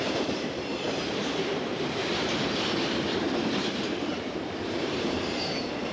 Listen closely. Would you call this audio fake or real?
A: fake